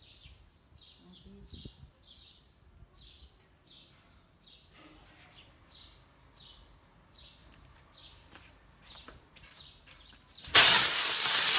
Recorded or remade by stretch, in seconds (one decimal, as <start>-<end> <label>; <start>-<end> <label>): 0.0-7.4 recorded; 7.4-11.6 remade